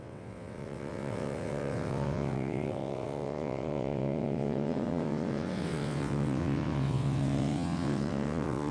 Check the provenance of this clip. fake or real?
fake